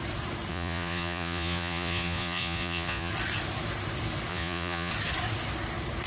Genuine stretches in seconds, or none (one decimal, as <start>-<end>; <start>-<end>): 0.0-0.5; 3.1-4.3; 4.9-6.1